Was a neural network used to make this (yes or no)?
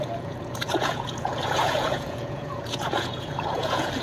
yes